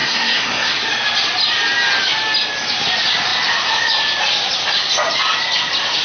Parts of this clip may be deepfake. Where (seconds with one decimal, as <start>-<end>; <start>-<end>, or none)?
0.0-0.8